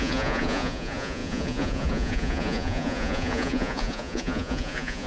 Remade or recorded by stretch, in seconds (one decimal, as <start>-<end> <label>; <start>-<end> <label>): 0.0-5.1 remade